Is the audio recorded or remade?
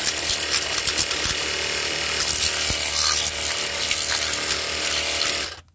recorded